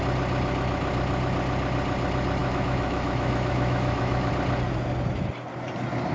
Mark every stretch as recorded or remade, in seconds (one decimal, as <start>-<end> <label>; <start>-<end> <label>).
0.0-2.4 recorded; 2.4-4.3 remade; 4.3-6.1 recorded